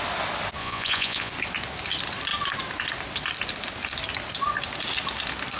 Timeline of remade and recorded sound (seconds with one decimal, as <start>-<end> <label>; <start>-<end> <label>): 0.0-0.6 recorded; 0.6-1.3 remade; 1.3-5.6 recorded